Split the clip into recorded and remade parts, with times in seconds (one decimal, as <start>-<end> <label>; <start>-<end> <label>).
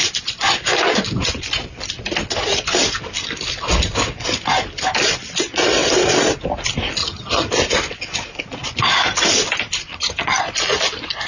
0.0-7.0 recorded; 7.0-7.5 remade; 7.5-9.9 recorded; 9.9-10.4 remade; 10.4-11.3 recorded